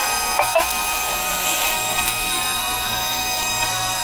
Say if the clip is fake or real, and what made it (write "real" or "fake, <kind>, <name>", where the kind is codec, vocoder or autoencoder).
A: fake, codec, SNAC